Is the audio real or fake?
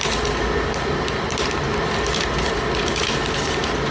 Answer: real